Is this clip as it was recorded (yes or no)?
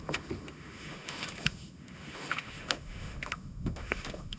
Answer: no